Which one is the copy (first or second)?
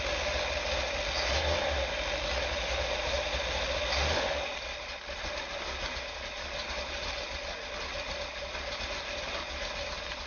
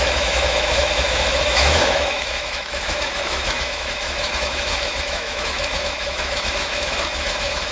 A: second